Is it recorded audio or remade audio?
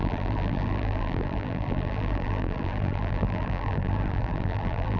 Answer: remade